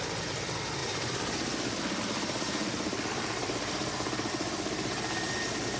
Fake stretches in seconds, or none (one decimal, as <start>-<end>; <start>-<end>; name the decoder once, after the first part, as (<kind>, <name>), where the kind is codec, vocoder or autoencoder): none